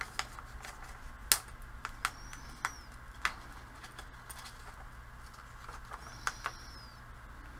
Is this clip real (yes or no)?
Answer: yes